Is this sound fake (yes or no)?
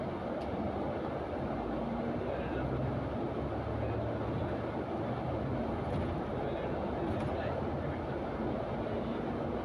no